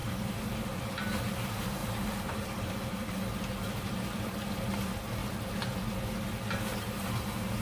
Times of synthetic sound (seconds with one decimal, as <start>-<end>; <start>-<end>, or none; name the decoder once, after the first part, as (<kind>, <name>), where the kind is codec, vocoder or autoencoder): 0.0-1.3 (vocoder, BigVGAN v2); 1.8-4.5